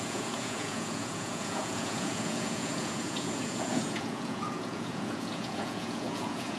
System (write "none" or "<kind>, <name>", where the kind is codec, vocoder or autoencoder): vocoder, Vocos